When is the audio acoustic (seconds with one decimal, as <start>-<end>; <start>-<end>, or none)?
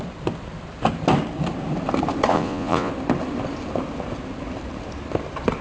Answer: 0.0-2.3; 2.9-5.6